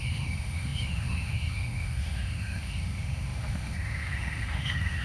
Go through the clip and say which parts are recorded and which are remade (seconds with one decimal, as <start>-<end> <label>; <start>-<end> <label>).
0.0-5.0 remade